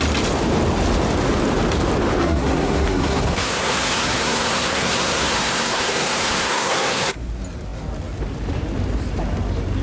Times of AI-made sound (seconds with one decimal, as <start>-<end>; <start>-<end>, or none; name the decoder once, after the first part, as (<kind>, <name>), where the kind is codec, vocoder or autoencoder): 2.2-7.3 (codec, SNAC)